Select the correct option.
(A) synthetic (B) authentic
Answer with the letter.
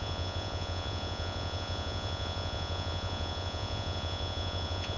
A